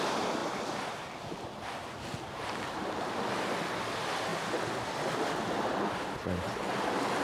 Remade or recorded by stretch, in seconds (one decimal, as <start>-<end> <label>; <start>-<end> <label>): 0.0-7.2 recorded

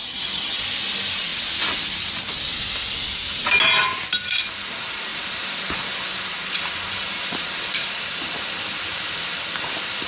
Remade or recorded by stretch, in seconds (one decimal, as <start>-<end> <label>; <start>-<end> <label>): 0.0-0.6 remade; 0.6-10.1 recorded

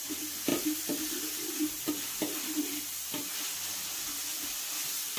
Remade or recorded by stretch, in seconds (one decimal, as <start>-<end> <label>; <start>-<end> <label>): 0.0-0.5 recorded; 0.5-3.3 remade; 3.3-5.2 recorded

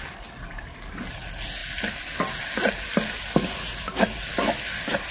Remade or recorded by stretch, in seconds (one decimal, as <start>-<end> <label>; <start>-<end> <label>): 0.0-5.1 recorded

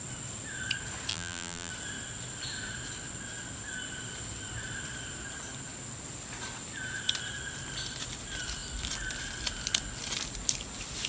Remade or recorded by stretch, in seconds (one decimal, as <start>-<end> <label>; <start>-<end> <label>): 0.0-1.1 recorded; 1.1-1.7 remade; 1.7-11.1 recorded